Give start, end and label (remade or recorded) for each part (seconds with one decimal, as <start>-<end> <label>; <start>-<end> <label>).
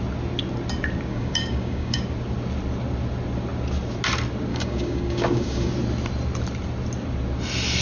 0.0-1.1 recorded; 1.1-2.0 remade; 2.0-4.5 recorded; 4.5-5.7 remade; 5.7-7.8 recorded